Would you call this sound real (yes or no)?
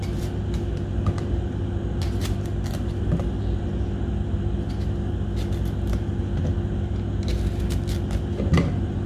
yes